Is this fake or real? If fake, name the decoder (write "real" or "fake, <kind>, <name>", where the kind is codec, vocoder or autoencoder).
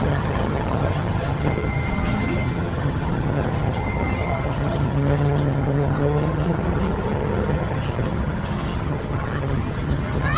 fake, vocoder, HiFi-GAN